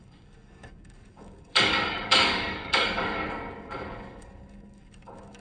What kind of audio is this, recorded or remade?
remade